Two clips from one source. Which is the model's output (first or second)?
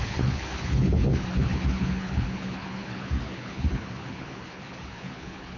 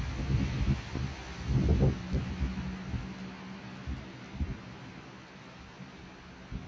first